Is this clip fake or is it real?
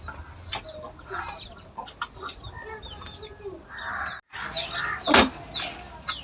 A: real